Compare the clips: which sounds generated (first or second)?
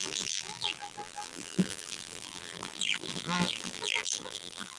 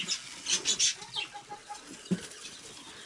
first